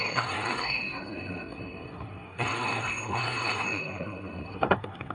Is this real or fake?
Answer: fake